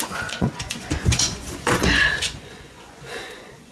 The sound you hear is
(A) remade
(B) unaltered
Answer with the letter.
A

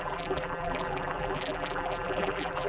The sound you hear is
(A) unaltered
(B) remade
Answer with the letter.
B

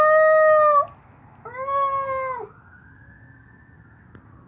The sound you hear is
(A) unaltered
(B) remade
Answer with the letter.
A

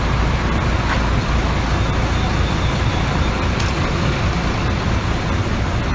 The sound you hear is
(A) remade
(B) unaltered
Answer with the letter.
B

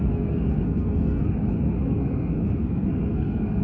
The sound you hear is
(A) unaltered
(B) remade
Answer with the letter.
B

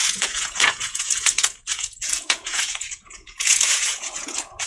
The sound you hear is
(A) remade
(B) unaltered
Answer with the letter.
A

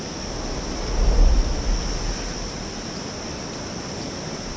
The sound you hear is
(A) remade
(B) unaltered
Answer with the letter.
B